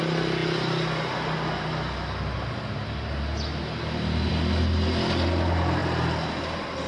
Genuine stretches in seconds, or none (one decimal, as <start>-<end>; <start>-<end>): 0.0-6.9